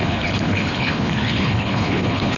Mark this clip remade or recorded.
remade